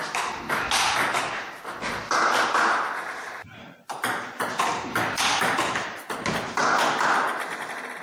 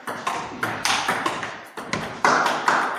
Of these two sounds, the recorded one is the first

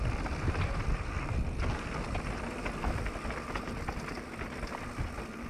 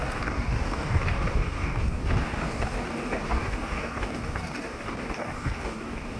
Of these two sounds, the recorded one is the first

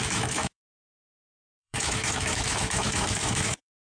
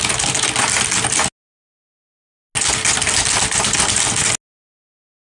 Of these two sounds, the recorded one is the second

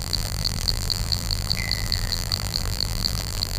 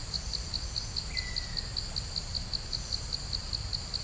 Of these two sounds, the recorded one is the second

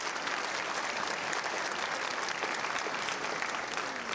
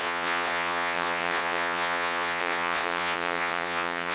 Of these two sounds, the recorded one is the first